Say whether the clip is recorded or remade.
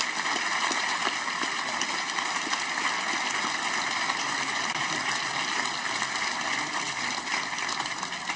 recorded